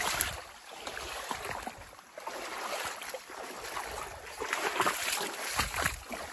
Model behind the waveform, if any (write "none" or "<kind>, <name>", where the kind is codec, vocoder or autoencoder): none